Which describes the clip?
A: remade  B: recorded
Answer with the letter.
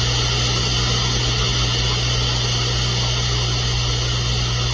B